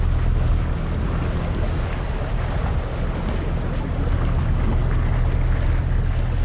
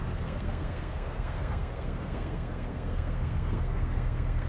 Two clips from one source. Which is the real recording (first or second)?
first